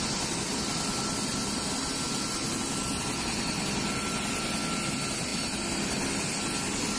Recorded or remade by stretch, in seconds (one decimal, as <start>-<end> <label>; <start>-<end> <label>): 0.0-7.0 recorded